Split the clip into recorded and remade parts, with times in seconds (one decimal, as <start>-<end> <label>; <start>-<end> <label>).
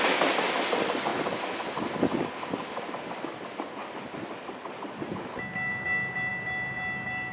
0.0-3.8 recorded; 3.8-5.4 remade; 5.4-7.3 recorded